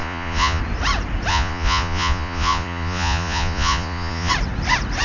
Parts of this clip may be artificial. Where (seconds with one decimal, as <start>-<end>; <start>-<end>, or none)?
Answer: 0.0-0.6; 1.3-4.3